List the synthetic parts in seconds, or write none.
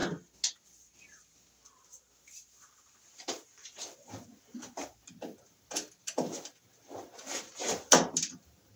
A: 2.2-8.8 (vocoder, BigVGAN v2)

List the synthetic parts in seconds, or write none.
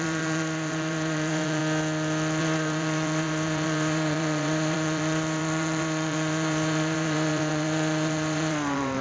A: 0.0-1.6 (vocoder, BigVGAN v2); 2.4-9.0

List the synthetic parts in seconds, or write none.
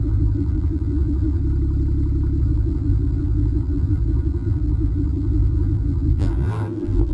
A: 0.0-1.4 (vocoder, BigVGAN v2); 2.4-7.1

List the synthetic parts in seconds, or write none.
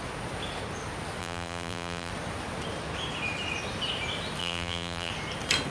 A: 1.2-2.1 (vocoder, BigVGAN v2); 4.4-5.1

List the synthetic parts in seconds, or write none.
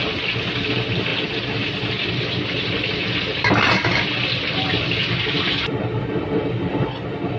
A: 1.1-2.7 (vocoder, BigVGAN v2); 3.9-7.4